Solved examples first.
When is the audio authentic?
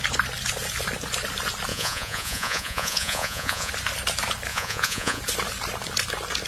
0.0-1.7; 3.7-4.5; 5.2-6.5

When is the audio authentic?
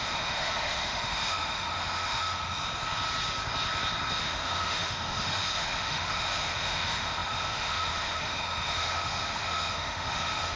2.6-4.2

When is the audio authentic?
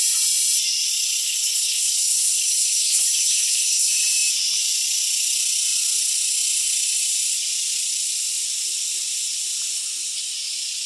0.0-1.2; 3.9-10.9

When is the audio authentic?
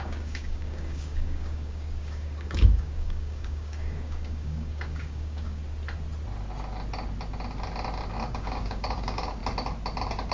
5.6-8.1; 9.4-10.3